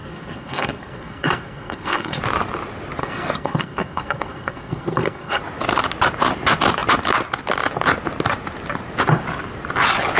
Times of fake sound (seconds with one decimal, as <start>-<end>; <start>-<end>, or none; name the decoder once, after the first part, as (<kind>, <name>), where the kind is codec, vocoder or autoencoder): 0.0-2.2 (codec, SNAC); 3.0-5.4